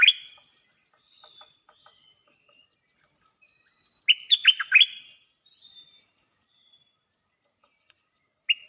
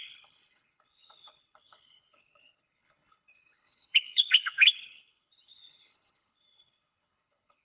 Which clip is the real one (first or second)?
first